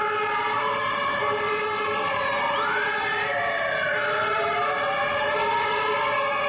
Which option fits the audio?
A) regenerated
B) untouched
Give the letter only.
B